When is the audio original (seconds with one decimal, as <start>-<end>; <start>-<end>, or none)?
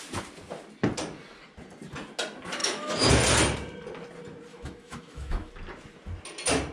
0.0-2.6; 3.1-4.5; 5.5-6.7